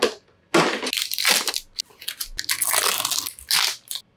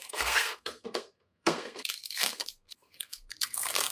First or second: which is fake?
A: second